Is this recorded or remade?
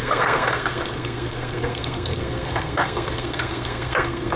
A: remade